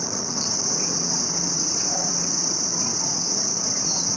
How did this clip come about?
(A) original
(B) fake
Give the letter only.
B